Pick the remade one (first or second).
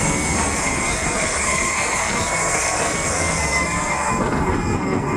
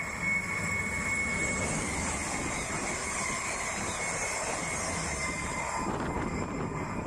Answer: first